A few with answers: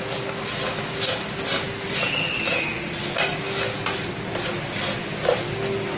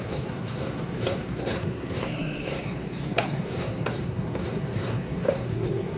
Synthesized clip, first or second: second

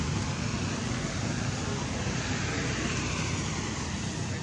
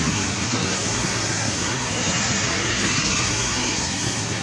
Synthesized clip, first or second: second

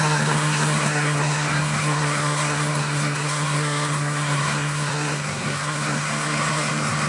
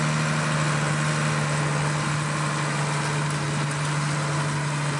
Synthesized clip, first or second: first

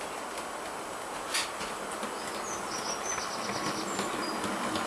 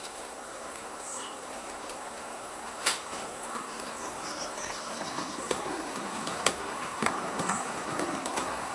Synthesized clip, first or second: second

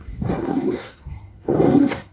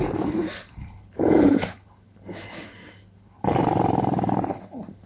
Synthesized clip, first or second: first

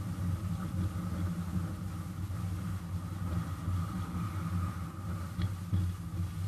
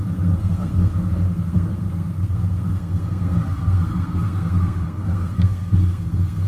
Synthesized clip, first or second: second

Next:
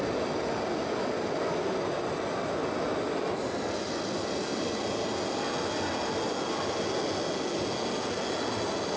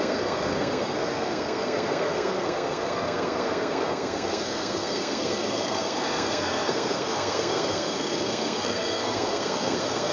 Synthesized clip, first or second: second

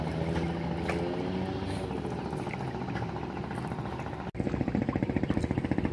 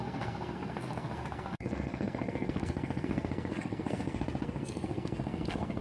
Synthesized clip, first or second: second